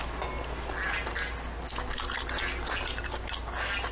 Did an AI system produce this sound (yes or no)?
no